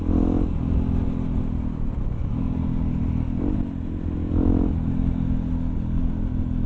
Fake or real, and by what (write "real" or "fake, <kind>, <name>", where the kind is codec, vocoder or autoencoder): real